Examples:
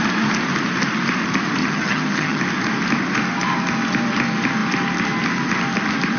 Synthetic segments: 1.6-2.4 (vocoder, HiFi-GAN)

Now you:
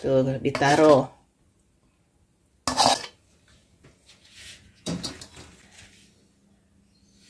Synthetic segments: 3.6-5.0 (vocoder, Vocos)

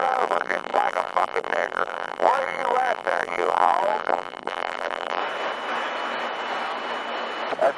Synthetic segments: 0.0-5.2 (vocoder, BigVGAN v2)

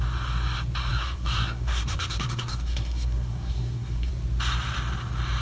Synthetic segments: 0.9-4.1 (codec, SNAC)

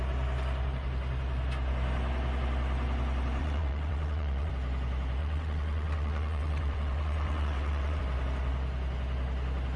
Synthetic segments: 3.4-4.5 (vocoder, WaveNeXt); 5.2-8.0

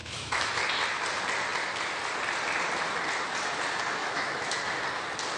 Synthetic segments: 0.0-0.6 (autoencoder, DAC-VAE); 4.0-4.6

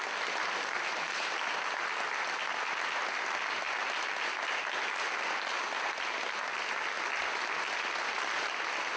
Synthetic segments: none